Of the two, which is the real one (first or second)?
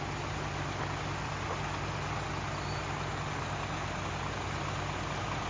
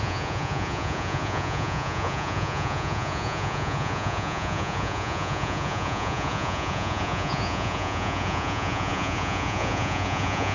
first